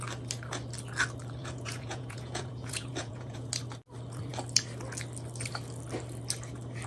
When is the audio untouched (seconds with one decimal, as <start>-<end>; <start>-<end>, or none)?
0.0-1.4; 3.5-6.9